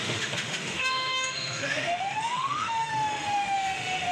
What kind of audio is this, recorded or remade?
remade